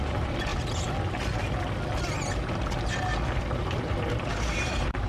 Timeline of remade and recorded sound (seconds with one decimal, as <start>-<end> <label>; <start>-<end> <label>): 0.0-0.5 remade; 0.5-3.6 recorded; 3.6-5.1 remade